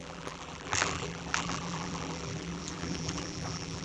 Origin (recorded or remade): remade